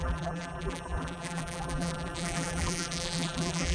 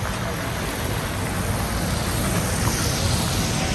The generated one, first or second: first